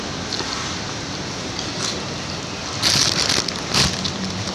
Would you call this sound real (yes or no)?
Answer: yes